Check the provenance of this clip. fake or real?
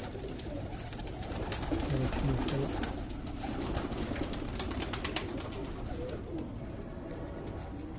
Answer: real